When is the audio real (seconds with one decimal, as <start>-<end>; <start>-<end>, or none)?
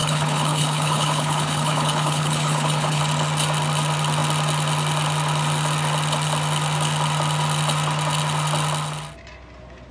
3.0-9.9